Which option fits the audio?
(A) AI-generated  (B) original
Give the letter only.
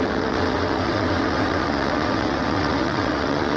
A